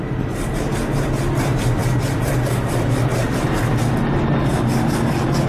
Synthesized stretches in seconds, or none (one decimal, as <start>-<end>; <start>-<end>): none